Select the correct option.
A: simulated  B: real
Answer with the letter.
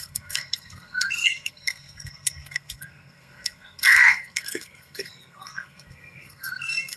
A